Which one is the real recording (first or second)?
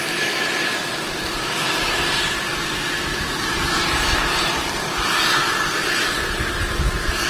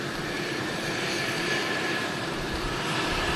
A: first